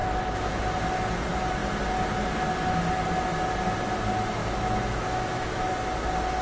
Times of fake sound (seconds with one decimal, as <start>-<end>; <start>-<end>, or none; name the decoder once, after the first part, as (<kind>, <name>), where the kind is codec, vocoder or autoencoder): 0.0-0.6 (autoencoder, DAC-VAE); 4.4-5.6